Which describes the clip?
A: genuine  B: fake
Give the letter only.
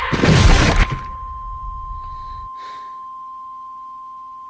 A